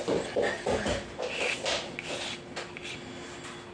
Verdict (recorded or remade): recorded